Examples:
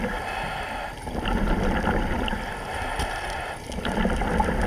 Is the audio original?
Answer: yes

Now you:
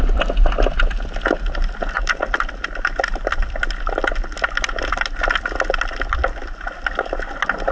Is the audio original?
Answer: yes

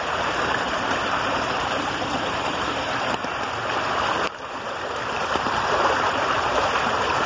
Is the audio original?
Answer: no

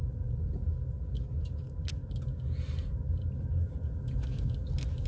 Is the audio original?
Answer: yes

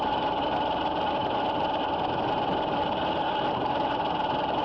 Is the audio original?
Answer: yes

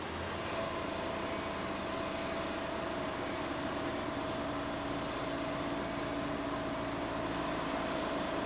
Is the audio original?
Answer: yes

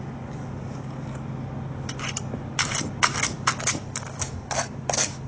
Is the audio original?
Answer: yes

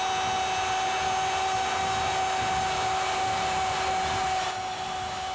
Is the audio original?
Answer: yes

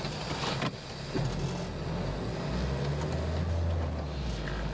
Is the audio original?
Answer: yes